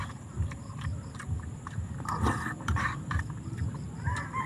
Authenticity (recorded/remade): remade